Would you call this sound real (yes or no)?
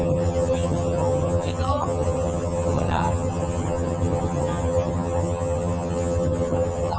no